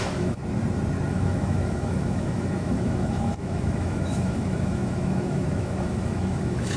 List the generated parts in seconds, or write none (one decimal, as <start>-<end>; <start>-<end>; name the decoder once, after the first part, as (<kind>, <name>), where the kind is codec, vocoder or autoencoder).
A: 0.0-0.4 (autoencoder, DAC-VAE); 1.1-6.8

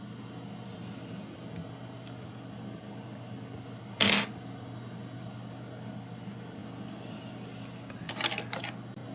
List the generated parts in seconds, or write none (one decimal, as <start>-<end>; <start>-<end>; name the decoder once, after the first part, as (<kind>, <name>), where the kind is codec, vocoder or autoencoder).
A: none

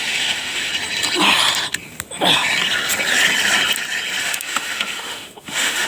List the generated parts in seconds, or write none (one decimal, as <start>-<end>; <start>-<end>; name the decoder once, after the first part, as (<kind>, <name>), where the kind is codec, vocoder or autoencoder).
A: 0.0-0.7 (autoencoder, DAC-VAE); 4.2-5.9

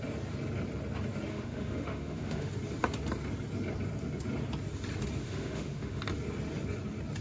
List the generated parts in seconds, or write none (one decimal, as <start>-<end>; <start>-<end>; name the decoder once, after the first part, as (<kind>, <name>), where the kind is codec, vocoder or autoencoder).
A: 1.3-2.5 (autoencoder, DAC-VAE); 5.2-6.0

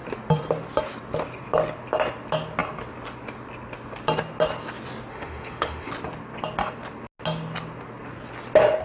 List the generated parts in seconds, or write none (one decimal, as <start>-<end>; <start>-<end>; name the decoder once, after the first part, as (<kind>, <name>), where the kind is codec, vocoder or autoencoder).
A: 5.1-5.9 (autoencoder, DAC-VAE)

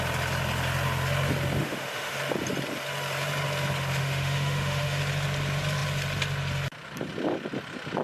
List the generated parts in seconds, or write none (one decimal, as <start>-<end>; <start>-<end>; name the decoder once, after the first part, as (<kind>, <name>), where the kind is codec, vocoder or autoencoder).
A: 1.6-2.2 (autoencoder, DAC-VAE); 4.0-5.0